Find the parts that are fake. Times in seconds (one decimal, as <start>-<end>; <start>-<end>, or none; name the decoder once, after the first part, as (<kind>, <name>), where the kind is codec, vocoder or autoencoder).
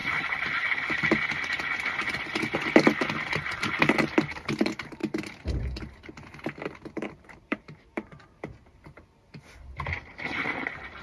4.4-5.0 (vocoder, BigVGAN v2); 7.2-8.2; 10.1-11.0